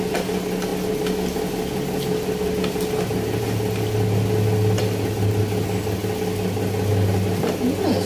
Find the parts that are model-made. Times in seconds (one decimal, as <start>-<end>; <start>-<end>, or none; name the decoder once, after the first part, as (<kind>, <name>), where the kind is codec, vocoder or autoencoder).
none